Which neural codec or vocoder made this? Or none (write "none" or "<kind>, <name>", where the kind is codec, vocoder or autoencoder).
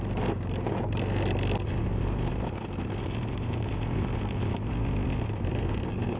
none